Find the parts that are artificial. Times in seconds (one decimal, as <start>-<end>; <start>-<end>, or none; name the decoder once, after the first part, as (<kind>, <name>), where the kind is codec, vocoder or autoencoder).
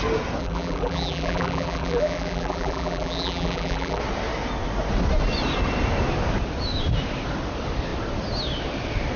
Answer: 0.4-4.0 (vocoder, BigVGAN v2)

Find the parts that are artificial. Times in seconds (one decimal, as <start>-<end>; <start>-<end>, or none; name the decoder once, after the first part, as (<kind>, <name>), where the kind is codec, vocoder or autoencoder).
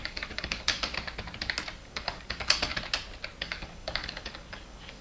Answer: 0.0-0.9 (codec, DAC); 1.8-2.7; 3.4-5.0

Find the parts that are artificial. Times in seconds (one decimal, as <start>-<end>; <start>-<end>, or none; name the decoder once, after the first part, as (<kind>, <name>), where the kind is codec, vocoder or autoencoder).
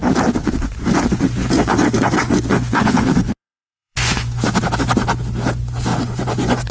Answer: 0.4-4.4 (vocoder, Vocos); 5.9-6.7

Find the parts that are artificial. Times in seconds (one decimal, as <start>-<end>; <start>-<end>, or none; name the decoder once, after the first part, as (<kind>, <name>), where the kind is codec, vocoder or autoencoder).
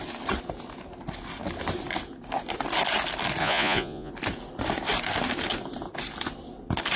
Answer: 3.4-4.1 (vocoder, Vocos)